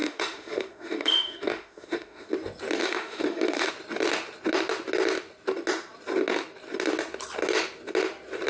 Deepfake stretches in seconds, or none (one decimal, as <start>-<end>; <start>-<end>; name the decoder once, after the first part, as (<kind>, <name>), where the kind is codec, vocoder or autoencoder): 0.0-2.3 (autoencoder, DAC-VAE); 2.8-3.7